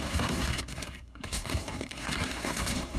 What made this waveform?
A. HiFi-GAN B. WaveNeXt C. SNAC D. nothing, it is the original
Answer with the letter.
C